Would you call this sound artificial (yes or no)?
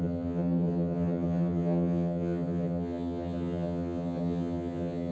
yes